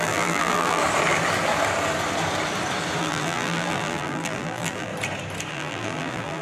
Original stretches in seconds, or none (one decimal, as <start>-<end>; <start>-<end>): 0.8-3.0; 4.9-5.5